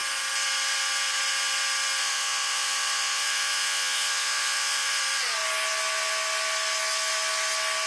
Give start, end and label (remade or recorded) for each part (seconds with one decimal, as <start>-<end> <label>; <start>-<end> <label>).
0.0-2.0 recorded; 2.0-5.0 remade; 5.0-7.9 recorded